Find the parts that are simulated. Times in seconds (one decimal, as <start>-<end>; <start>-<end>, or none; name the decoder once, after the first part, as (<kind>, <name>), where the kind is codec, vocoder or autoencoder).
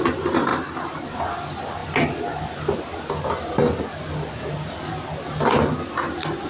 none